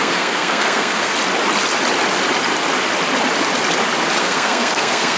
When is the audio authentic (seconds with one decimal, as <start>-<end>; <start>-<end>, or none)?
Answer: 1.1-4.2